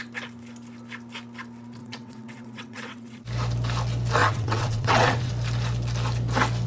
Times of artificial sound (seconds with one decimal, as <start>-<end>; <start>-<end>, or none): 1.8-3.2; 4.2-5.3

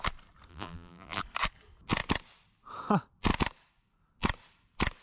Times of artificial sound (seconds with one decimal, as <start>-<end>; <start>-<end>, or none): 0.5-1.2

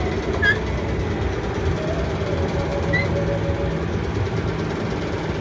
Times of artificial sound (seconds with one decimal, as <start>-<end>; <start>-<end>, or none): none

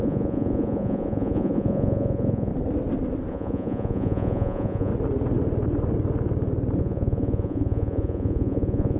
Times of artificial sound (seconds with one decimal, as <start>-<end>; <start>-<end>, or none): 0.0-2.5; 3.3-4.9; 6.8-9.0

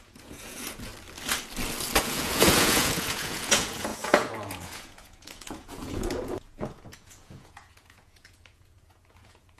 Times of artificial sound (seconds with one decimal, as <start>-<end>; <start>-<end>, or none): 0.0-0.9; 2.0-9.6

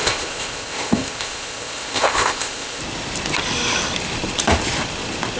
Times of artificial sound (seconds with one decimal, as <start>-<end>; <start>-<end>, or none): 0.0-2.8

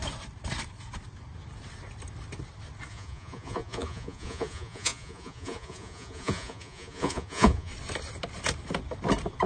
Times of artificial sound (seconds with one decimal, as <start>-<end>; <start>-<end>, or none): 2.9-7.7